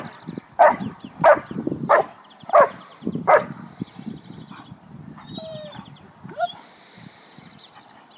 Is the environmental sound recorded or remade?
remade